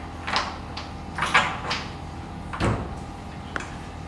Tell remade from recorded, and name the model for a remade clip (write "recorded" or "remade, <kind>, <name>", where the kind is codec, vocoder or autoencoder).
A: recorded